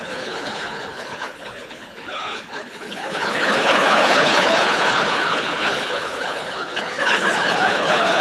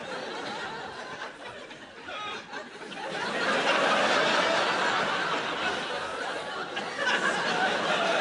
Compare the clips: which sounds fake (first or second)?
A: first